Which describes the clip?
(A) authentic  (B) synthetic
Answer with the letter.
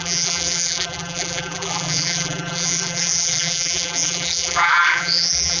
B